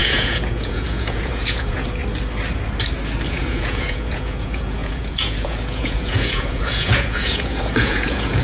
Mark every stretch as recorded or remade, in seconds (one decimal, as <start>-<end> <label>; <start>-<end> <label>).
0.0-2.0 remade; 2.0-3.3 recorded; 3.3-8.4 remade